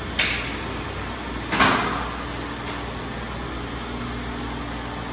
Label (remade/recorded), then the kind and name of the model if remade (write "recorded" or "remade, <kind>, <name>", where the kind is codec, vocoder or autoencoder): recorded